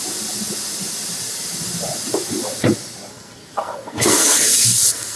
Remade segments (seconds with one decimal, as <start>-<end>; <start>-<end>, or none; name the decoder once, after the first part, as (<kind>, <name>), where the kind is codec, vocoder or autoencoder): 3.1-5.2 (codec, SNAC)